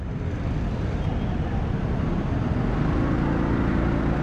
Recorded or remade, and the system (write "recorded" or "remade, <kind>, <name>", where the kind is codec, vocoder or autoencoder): recorded